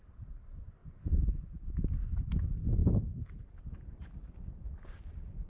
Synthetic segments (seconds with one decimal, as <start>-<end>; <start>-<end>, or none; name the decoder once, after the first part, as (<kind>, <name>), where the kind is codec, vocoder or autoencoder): 0.8-1.7 (vocoder, Vocos)